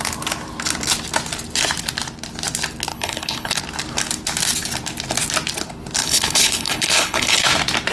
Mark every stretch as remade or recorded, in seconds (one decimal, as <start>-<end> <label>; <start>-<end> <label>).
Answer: 0.0-2.9 recorded; 2.9-3.6 remade; 3.6-6.0 recorded; 6.0-7.5 remade; 7.5-7.9 recorded

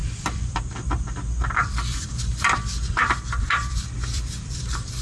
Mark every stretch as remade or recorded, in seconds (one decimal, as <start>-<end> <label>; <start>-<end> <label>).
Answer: 0.0-0.6 remade; 0.6-1.6 recorded; 1.6-3.1 remade; 3.1-3.6 recorded; 3.6-5.0 remade